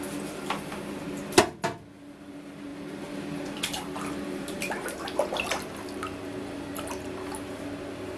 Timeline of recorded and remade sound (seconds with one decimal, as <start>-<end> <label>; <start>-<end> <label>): 0.0-2.7 recorded; 2.7-7.6 remade; 7.6-8.2 recorded